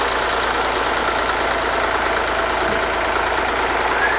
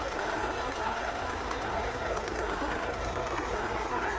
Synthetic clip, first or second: second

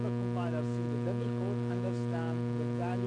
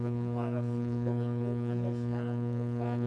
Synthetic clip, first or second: second